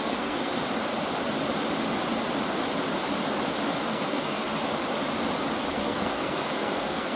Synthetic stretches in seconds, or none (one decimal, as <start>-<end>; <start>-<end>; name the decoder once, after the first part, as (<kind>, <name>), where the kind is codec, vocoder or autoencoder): 0.0-0.6 (codec, SNAC); 3.9-4.5; 5.7-7.2